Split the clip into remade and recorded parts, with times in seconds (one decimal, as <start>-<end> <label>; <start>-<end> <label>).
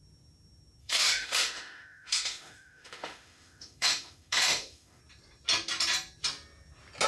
0.0-0.8 recorded; 0.8-5.0 remade; 5.0-7.1 recorded